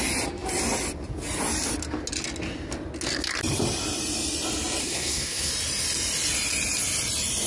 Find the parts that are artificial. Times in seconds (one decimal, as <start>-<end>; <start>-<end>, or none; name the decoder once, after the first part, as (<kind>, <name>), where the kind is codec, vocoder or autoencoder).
4.8-5.5 (codec, SNAC)